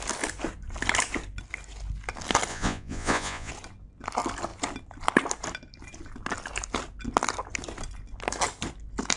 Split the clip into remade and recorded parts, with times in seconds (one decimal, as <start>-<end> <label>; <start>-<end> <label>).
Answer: 0.0-2.5 recorded; 2.5-3.5 remade; 3.5-9.2 recorded